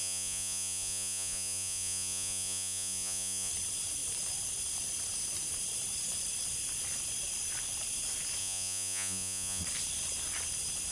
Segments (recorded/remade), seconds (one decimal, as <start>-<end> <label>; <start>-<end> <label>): 0.0-3.5 remade; 3.5-8.4 recorded; 8.4-9.6 remade; 9.6-10.9 recorded